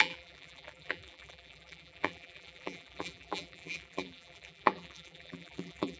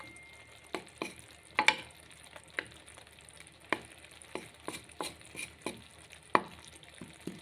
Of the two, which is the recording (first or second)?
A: second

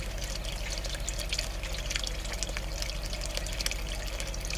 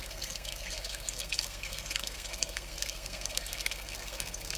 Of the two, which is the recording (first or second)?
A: first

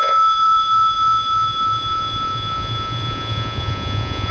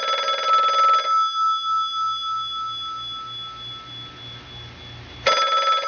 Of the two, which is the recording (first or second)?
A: second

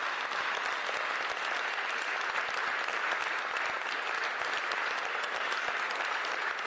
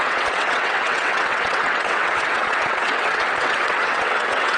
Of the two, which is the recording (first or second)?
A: first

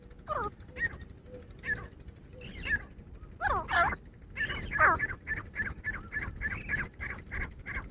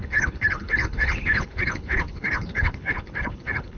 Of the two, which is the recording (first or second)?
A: first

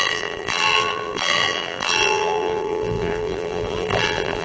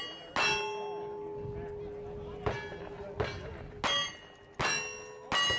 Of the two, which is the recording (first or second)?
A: second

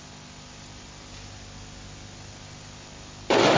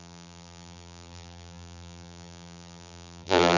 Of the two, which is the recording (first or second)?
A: first